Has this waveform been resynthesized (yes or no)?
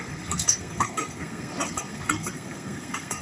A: yes